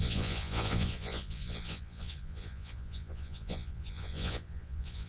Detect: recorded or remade remade